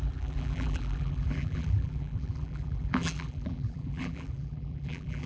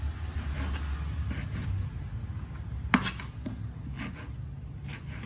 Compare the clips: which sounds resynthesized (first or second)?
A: first